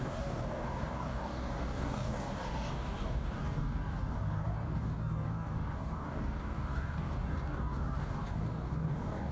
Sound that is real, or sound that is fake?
fake